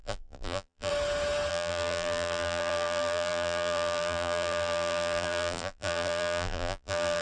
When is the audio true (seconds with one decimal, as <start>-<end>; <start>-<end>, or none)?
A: 0.9-1.5